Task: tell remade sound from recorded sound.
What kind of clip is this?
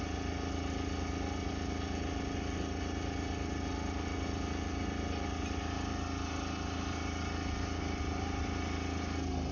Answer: recorded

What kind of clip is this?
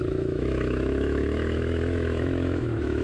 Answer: remade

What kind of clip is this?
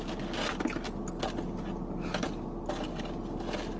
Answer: recorded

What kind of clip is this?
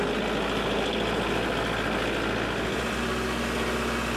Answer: recorded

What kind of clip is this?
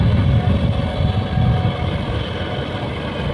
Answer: recorded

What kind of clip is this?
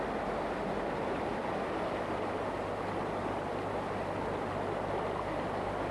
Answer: recorded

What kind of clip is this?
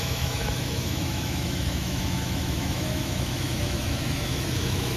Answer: remade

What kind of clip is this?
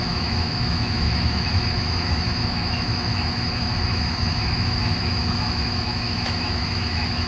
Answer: remade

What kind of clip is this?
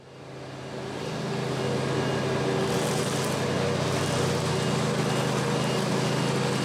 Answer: recorded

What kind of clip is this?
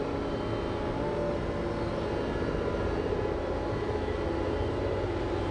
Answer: recorded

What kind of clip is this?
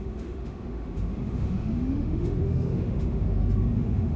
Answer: remade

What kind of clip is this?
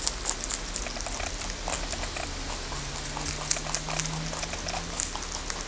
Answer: recorded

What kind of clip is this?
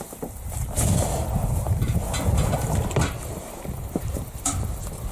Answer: recorded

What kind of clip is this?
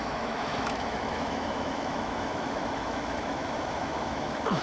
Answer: remade